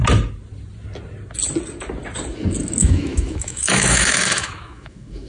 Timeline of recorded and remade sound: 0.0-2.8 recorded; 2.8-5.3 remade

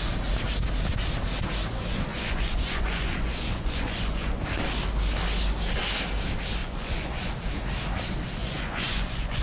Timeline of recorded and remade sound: 0.0-2.1 recorded; 2.1-4.4 remade; 4.4-6.6 recorded; 6.6-7.3 remade; 7.3-8.4 recorded; 8.4-9.4 remade

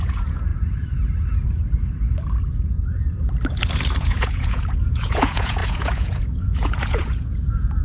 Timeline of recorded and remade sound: 0.0-0.5 remade; 0.5-4.0 recorded; 4.0-7.8 remade

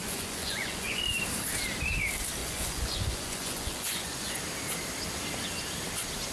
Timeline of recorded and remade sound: 0.0-1.0 remade; 1.0-2.4 recorded; 2.4-4.4 remade; 4.4-6.3 recorded

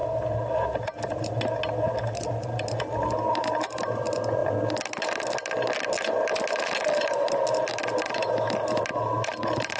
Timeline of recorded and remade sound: 0.0-9.8 recorded

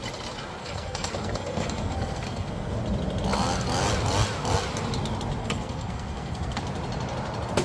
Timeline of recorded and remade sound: 0.0-0.6 recorded; 0.6-2.8 remade; 2.8-5.4 recorded; 5.4-6.6 remade; 6.6-7.6 recorded